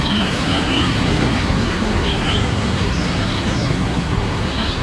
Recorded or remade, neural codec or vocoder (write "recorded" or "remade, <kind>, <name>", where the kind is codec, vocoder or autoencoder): remade, codec, SNAC